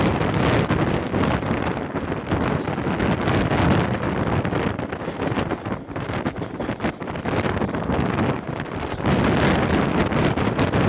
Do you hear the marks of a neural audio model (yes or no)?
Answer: no